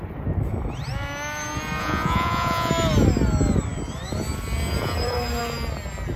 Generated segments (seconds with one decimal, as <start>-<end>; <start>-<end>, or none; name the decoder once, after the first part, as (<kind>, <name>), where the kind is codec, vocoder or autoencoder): 1.8-2.7 (vocoder, Vocos)